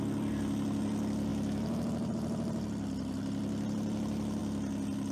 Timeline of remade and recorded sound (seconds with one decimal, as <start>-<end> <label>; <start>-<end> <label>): 0.0-5.1 recorded